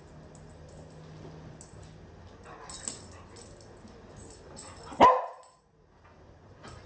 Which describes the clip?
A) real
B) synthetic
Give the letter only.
A